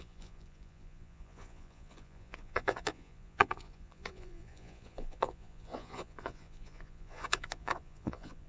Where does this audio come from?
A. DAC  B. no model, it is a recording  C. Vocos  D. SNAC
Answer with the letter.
C